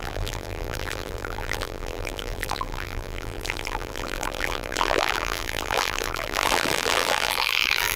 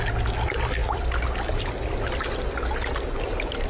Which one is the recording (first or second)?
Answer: second